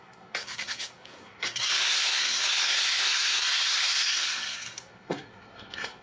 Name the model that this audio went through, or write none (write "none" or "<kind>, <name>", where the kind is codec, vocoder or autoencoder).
codec, SNAC